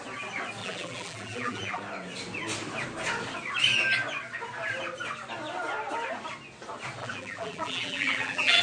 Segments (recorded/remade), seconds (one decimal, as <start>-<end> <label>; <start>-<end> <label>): 0.0-0.6 recorded; 0.6-1.8 remade; 1.8-7.0 recorded; 7.0-8.6 remade

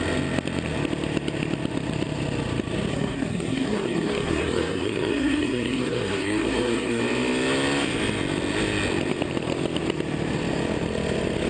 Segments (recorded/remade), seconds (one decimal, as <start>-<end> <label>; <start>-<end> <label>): 0.0-2.9 recorded; 2.9-7.0 remade; 7.0-11.5 recorded

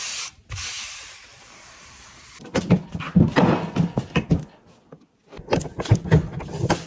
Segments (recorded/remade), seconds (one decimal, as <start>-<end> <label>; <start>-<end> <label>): 0.0-1.3 recorded; 1.3-2.6 remade; 2.6-6.9 recorded